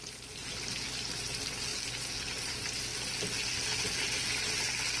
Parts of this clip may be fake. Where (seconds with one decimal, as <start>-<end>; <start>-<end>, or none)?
none